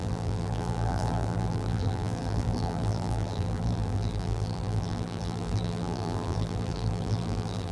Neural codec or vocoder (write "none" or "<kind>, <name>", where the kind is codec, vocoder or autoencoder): vocoder, BigVGAN v2